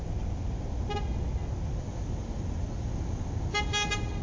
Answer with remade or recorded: recorded